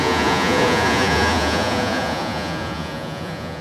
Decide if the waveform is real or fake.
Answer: fake